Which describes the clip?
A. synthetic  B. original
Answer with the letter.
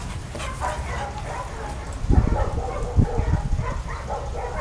B